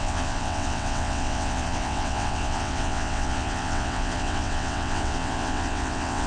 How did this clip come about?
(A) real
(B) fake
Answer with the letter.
B